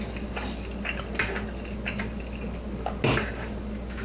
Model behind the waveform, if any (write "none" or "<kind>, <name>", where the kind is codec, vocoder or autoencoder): none